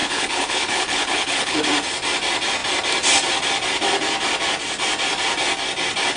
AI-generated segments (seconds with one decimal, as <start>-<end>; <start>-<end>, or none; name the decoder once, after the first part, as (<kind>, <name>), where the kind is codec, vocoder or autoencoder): 0.0-1.6 (codec, HILCodec)